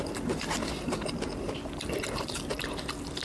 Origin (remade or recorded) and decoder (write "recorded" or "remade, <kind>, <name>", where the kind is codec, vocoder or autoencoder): recorded